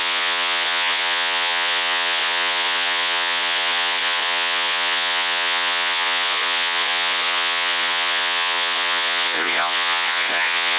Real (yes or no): no